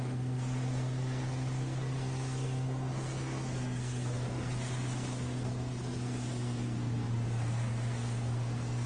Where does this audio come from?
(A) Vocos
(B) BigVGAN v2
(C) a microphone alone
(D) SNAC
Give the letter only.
D